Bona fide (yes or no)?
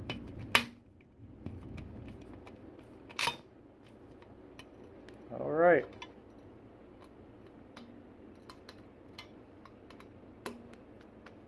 yes